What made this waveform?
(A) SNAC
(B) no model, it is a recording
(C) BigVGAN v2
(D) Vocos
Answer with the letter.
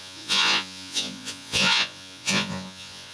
D